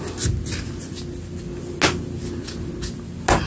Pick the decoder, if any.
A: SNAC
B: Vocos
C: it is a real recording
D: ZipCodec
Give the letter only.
C